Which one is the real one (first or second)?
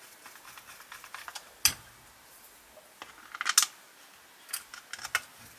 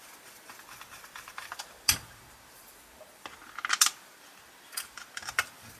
first